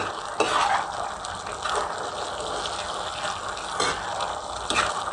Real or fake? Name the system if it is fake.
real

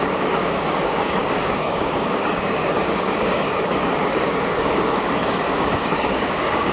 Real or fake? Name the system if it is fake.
fake, codec, DAC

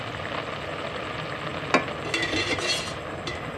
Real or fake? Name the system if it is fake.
real